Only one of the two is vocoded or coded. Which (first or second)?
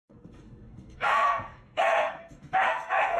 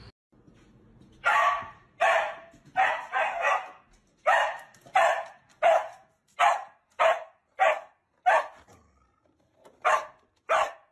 first